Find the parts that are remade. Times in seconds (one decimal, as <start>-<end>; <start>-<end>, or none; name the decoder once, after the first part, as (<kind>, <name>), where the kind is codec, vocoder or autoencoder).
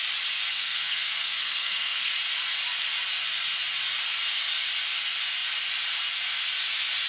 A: 0.5-2.1 (codec, SNAC)